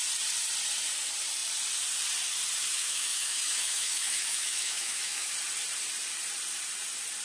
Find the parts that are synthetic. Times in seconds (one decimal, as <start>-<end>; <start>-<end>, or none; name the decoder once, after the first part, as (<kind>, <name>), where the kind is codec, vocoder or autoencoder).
2.7-5.3 (autoencoder, DAC-VAE)